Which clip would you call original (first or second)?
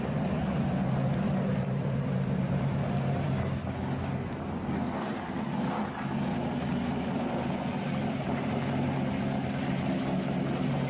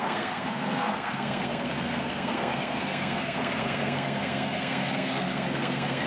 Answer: first